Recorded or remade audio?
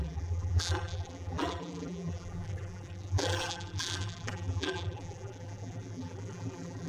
remade